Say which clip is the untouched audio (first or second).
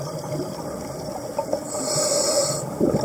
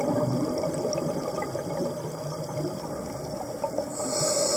second